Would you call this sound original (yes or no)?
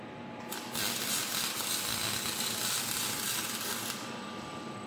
yes